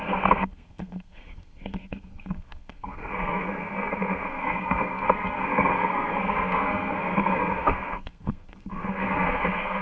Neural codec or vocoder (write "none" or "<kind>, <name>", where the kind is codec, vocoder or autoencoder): codec, SNAC